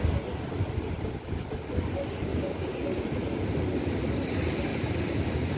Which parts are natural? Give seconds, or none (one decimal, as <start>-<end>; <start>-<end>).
0.0-2.3; 3.0-5.6